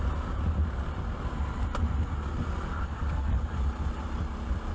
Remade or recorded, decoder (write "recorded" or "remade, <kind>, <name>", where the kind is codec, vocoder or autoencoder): recorded